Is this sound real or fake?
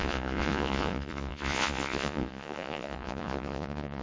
fake